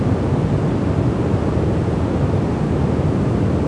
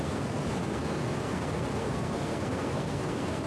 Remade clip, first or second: second